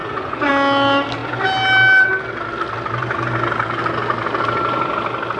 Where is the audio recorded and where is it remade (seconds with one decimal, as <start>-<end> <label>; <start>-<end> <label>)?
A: 0.0-0.5 remade; 0.5-5.4 recorded